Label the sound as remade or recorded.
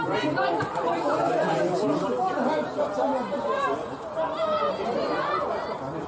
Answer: recorded